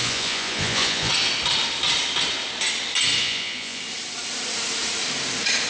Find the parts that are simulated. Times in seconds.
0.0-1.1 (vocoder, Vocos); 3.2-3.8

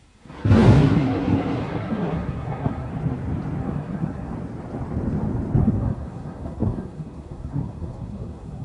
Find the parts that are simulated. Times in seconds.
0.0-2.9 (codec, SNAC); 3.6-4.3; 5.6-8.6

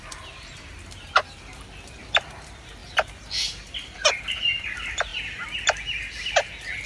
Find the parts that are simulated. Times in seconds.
none

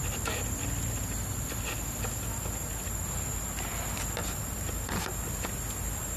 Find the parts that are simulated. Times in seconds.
4.2-6.2 (vocoder, BigVGAN v2)

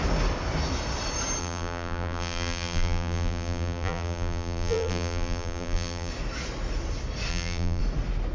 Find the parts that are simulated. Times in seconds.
1.4-6.1 (vocoder, BigVGAN v2); 7.3-7.8

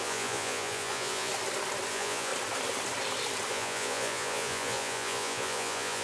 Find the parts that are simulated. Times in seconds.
0.0-1.3 (vocoder, Vocos); 1.9-2.3; 3.5-6.0

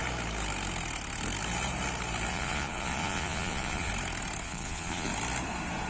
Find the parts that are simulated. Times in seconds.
2.3-3.9 (vocoder, Vocos); 4.4-5.1